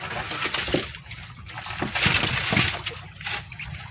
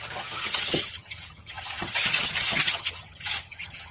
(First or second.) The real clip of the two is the first